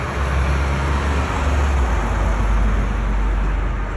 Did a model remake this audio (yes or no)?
no